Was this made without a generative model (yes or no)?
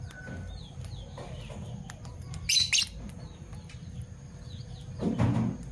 yes